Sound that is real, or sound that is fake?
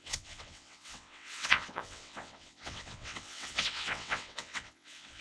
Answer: fake